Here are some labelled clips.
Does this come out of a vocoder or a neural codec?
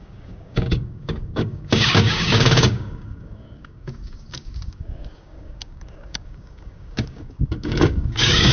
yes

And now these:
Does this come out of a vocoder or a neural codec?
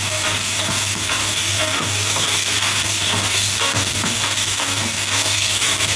yes